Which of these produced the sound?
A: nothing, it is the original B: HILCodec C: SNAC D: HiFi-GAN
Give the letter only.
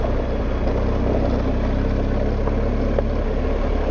A